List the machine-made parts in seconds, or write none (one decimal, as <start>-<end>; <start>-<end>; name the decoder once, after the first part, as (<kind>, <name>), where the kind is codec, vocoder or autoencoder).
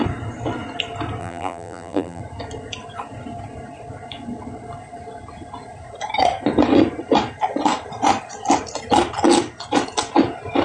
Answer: 1.2-2.2 (vocoder, BigVGAN v2)